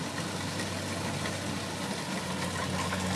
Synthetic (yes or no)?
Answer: no